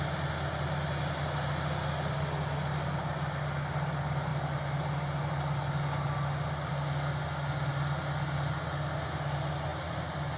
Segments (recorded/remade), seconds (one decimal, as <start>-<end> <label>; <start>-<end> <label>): 0.0-10.4 recorded